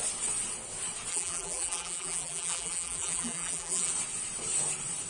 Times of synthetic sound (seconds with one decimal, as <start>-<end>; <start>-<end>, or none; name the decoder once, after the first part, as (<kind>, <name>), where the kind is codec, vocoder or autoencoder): 1.1-3.9 (vocoder, BigVGAN v2)